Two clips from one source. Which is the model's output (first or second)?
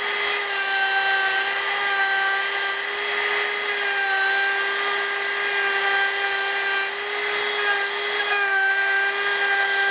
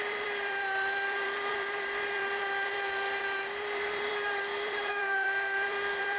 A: second